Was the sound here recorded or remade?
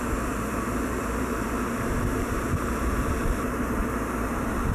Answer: remade